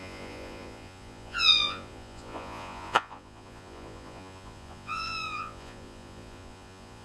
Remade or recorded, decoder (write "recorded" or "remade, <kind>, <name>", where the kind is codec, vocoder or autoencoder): remade, vocoder, Vocos